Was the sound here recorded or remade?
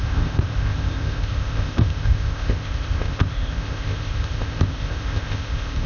remade